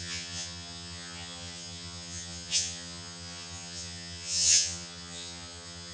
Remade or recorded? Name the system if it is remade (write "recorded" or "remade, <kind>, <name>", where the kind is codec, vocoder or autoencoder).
remade, vocoder, HiFi-GAN